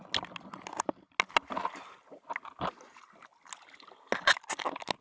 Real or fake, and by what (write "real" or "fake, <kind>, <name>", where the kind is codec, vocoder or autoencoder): real